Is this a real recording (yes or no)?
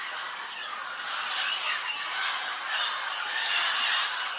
yes